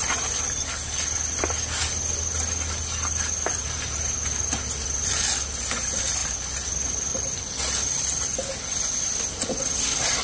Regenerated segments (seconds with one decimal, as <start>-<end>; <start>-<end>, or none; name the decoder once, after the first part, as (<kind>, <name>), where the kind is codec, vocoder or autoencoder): none